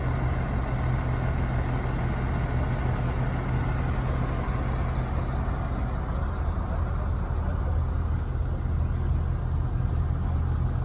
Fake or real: real